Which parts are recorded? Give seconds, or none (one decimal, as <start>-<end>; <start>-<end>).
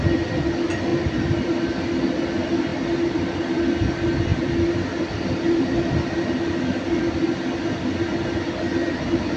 0.0-0.9; 1.6-2.7; 3.2-4.3; 7.0-9.4